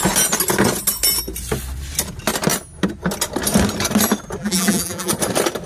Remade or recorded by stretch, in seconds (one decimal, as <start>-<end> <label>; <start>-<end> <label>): 0.0-4.4 recorded; 4.4-5.1 remade; 5.1-5.7 recorded